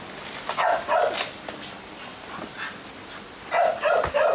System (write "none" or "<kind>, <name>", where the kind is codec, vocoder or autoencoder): vocoder, BigVGAN v2